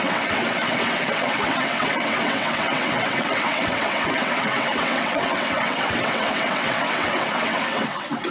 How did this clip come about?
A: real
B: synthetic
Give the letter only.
B